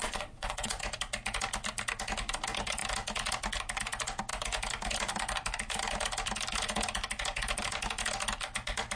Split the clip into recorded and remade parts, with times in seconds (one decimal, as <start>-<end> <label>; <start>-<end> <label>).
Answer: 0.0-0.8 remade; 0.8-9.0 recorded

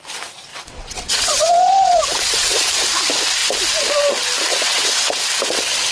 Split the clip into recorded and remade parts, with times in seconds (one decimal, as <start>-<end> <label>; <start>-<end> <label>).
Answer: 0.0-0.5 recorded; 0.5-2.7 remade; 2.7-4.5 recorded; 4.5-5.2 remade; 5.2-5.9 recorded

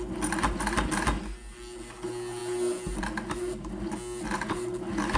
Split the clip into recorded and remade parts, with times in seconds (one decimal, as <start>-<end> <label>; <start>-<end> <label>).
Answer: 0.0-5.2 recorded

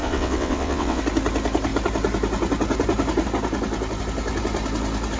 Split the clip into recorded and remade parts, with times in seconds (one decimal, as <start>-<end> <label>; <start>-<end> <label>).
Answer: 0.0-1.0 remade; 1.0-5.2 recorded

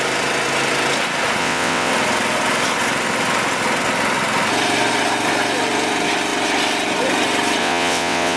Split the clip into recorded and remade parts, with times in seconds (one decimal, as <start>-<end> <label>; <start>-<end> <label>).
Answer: 0.0-1.4 recorded; 1.4-1.9 remade; 1.9-7.6 recorded; 7.6-8.4 remade